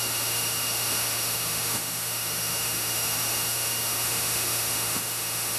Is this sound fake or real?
fake